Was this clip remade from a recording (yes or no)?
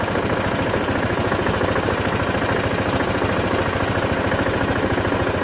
no